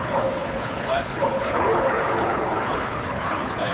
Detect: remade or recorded remade